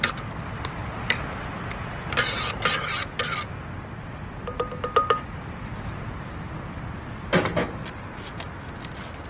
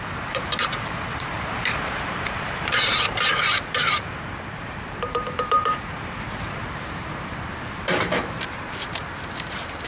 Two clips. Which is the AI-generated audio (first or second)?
second